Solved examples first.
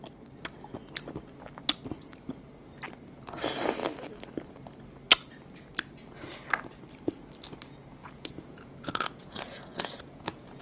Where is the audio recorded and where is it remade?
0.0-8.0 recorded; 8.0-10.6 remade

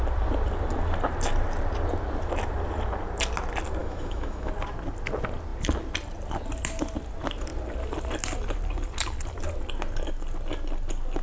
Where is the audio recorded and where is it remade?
0.0-3.8 recorded; 3.8-4.5 remade; 4.5-11.2 recorded